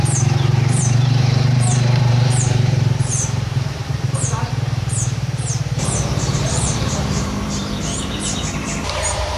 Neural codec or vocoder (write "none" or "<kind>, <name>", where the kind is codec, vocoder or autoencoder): vocoder, BigVGAN v2